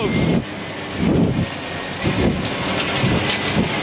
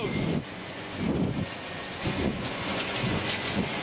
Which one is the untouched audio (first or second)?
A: first